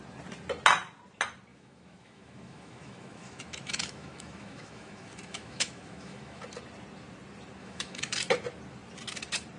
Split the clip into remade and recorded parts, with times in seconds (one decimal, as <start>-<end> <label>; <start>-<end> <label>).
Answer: 0.0-1.5 recorded; 1.5-6.4 remade; 6.4-7.6 recorded; 7.6-8.2 remade; 8.2-9.6 recorded